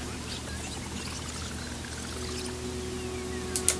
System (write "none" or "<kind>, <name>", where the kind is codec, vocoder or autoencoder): none